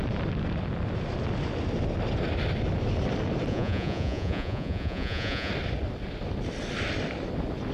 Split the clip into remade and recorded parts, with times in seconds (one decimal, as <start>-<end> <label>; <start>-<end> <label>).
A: 0.0-3.5 recorded; 3.5-5.5 remade; 5.5-7.7 recorded